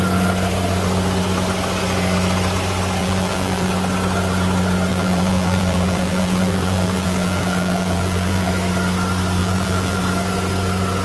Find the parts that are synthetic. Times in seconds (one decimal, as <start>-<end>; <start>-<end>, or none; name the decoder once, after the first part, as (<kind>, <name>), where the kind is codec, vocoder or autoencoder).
3.0-3.7 (vocoder, BigVGAN v2); 4.9-8.5; 9.4-10.0

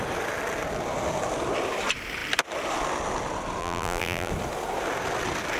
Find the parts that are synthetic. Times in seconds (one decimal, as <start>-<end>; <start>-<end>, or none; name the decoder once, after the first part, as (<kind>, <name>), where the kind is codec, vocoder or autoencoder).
3.6-4.3 (vocoder, BigVGAN v2)

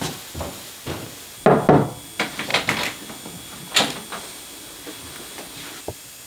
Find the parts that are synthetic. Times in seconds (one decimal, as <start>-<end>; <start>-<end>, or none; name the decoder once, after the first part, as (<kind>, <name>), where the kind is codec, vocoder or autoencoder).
none

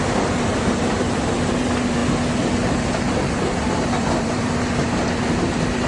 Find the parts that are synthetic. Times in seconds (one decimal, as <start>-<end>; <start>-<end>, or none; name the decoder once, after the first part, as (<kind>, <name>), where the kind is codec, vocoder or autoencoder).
0.0-5.9 (vocoder, BigVGAN v2)